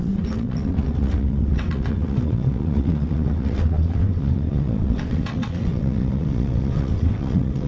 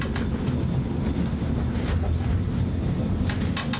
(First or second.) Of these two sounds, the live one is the second